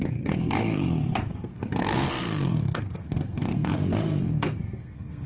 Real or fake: fake